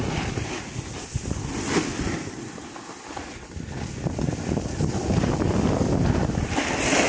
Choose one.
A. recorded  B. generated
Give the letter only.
A